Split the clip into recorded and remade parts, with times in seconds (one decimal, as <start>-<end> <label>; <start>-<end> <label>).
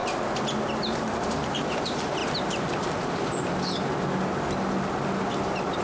0.0-0.8 recorded; 0.8-2.2 remade; 2.2-5.8 recorded